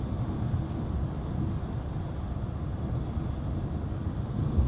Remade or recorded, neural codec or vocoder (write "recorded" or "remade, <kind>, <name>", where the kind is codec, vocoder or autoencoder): recorded